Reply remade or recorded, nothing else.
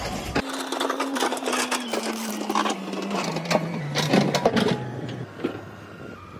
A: recorded